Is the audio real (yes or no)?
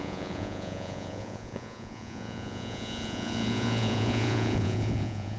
no